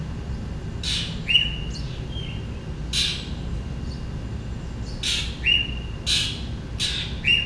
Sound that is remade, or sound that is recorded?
recorded